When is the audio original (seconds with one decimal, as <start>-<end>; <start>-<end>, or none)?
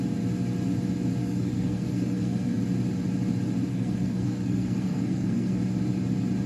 0.0-1.2; 2.6-3.7; 5.6-6.5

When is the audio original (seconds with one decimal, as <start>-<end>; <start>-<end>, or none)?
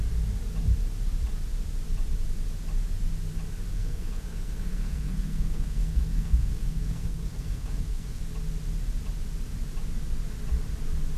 0.0-3.7; 8.2-11.2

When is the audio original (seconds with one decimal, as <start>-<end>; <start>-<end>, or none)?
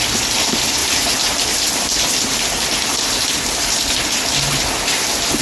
0.0-5.4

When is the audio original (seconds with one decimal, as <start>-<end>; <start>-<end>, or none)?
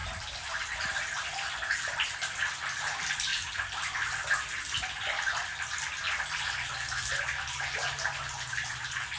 0.0-9.2